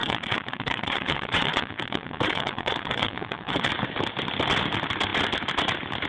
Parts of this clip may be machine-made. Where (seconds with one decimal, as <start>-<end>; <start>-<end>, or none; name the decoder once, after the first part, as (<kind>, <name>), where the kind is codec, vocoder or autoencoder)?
0.0-3.7 (vocoder, WaveNeXt)